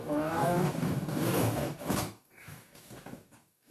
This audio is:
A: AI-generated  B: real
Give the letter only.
A